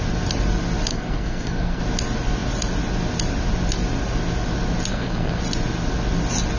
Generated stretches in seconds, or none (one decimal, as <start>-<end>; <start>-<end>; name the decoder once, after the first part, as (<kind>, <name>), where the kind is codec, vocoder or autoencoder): 0.9-1.8 (codec, SNAC); 4.9-5.4